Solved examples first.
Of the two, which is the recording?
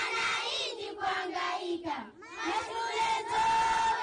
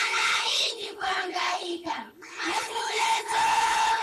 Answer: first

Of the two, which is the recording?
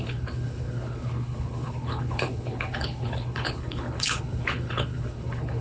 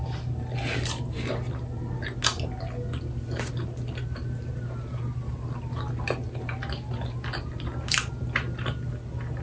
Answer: second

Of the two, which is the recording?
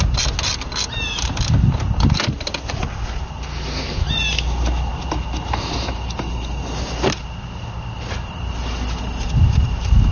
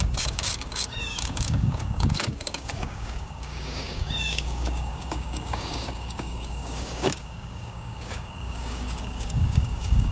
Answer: first